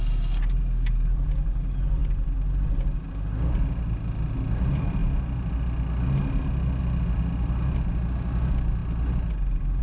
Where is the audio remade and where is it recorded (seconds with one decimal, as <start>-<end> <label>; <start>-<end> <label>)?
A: 0.0-9.8 recorded